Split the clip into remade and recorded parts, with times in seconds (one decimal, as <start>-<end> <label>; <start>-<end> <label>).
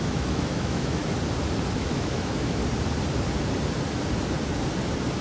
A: 0.0-1.0 remade; 1.0-1.8 recorded; 1.8-2.6 remade; 2.6-5.2 recorded